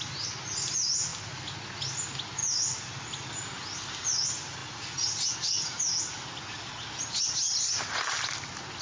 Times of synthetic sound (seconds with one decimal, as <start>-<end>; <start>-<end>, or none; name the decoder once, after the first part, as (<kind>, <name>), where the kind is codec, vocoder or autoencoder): none